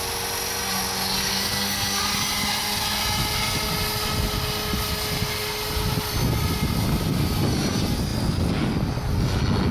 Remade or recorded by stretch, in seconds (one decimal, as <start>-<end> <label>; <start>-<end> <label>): 0.0-1.3 recorded; 1.3-2.0 remade; 2.0-9.7 recorded